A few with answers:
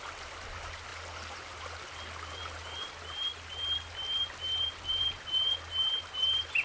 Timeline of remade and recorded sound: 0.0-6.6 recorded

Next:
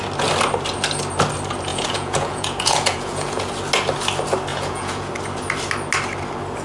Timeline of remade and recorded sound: 0.0-1.7 recorded; 1.7-3.5 remade; 3.5-4.5 recorded; 4.5-5.1 remade; 5.1-6.6 recorded

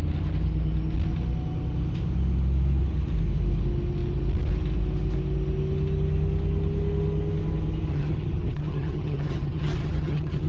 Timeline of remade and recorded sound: 0.0-7.9 recorded; 7.9-10.5 remade

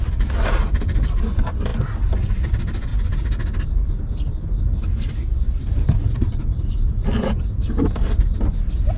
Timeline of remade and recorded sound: 0.0-1.7 remade; 1.7-2.5 recorded; 2.5-2.9 remade; 2.9-5.1 recorded; 5.1-9.0 remade

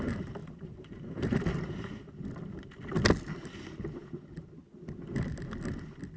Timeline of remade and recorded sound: 0.0-0.4 recorded; 0.4-2.2 remade; 2.2-6.2 recorded

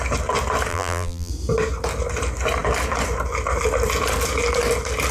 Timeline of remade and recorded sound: 0.0-0.7 recorded; 0.7-1.3 remade; 1.3-5.1 recorded

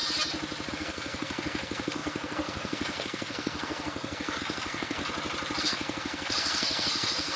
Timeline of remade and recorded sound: 0.0-0.7 recorded; 0.7-5.0 remade; 5.0-5.6 recorded; 5.6-7.4 remade